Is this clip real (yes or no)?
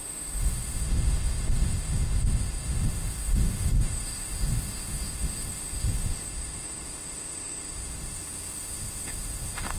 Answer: no